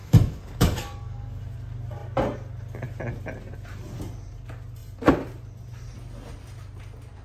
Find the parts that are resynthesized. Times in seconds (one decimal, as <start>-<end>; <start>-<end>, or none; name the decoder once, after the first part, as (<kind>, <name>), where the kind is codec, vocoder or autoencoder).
0.0-1.4 (codec, DAC)